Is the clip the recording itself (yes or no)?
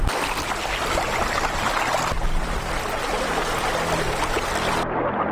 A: yes